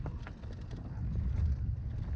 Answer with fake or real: real